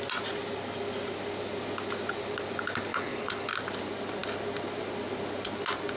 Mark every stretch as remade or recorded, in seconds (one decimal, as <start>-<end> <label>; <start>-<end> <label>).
0.0-2.9 recorded; 2.9-3.5 remade; 3.5-6.0 recorded